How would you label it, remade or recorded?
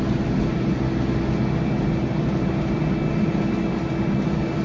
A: recorded